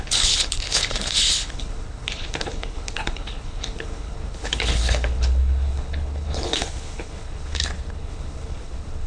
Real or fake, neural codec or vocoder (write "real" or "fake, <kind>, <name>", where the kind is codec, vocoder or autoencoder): fake, codec, HILCodec